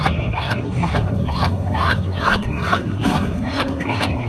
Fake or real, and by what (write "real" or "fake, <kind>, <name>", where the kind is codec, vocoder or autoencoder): fake, codec, SNAC